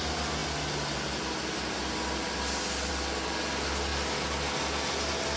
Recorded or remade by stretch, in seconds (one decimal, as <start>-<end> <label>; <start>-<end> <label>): 0.0-5.4 recorded